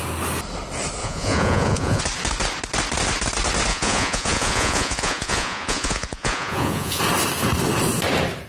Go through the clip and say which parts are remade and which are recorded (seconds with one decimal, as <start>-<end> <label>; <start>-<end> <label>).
0.0-1.0 recorded; 1.0-2.0 remade; 2.0-3.7 recorded; 3.7-7.0 remade; 7.0-8.5 recorded